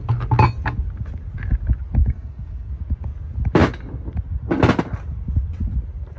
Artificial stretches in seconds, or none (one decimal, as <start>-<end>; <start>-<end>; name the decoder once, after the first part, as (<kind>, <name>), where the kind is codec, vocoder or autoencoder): 2.0-2.7 (codec, SNAC)